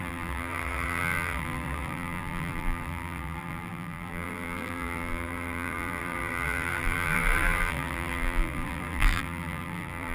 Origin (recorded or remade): remade